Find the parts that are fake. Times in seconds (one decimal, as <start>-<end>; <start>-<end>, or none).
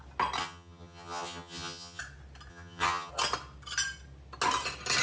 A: 0.4-2.0; 2.5-3.1